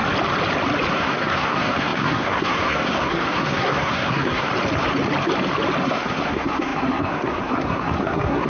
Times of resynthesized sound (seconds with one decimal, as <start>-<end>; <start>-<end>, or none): 0.9-4.5; 5.8-8.5